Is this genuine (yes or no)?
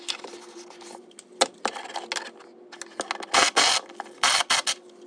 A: yes